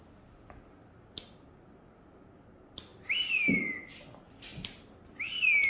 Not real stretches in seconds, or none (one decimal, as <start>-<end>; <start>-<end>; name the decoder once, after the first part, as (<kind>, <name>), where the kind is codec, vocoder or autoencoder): 2.9-3.6 (vocoder, BigVGAN v2)